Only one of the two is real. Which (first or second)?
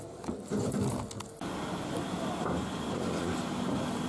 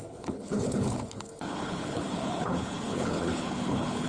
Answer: first